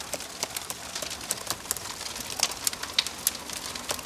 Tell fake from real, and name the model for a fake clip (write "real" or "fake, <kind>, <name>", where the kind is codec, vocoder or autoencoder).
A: real